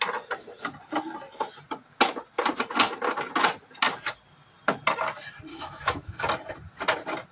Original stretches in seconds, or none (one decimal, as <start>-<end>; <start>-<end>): 0.0-5.5; 6.2-7.3

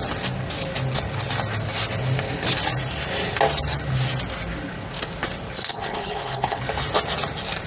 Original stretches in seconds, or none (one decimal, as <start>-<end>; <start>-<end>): 0.0-5.7; 6.6-7.7

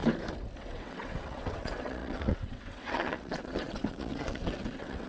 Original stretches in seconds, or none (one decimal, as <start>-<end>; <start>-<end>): 0.0-0.6

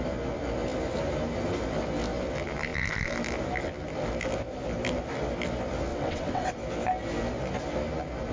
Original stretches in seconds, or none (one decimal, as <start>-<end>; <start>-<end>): 0.0-5.9; 6.5-8.3